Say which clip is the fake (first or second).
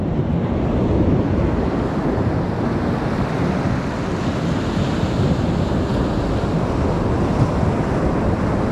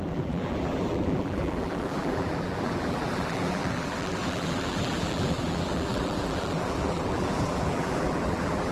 second